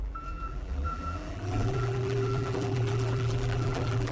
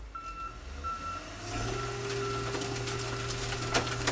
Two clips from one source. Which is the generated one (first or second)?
first